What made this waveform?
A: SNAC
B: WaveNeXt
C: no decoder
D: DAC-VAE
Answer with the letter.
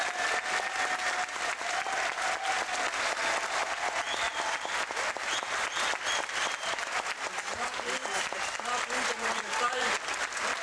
C